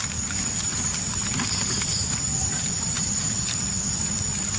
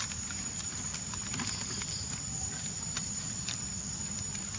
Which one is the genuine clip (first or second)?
first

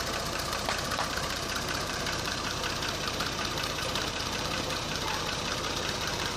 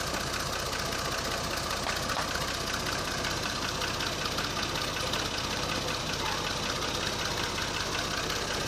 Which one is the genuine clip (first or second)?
second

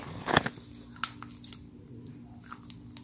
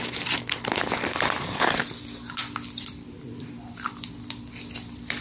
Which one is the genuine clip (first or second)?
first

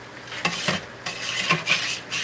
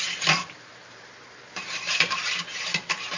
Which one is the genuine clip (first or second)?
first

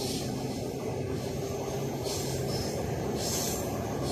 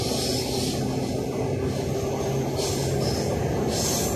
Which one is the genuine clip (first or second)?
second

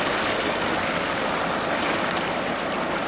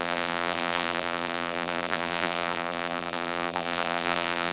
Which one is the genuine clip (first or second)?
first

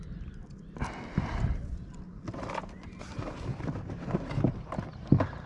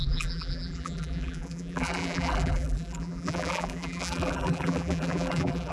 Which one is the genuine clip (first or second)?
first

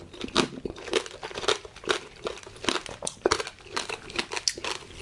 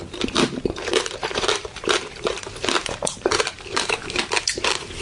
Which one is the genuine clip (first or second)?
first